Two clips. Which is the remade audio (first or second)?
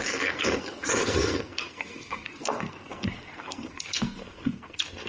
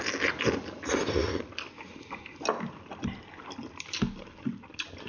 first